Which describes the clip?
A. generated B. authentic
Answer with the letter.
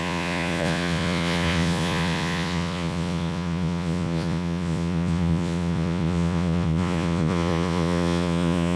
A